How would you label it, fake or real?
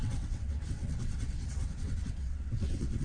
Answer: fake